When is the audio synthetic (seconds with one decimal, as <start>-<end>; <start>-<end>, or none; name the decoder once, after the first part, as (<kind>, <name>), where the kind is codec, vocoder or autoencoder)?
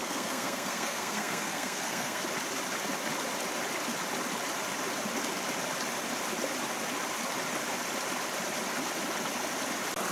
0.0-2.2 (codec, SNAC)